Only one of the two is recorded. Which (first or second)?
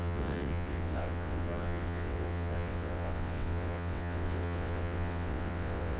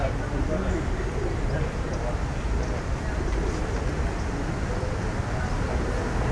second